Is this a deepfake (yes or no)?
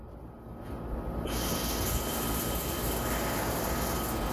no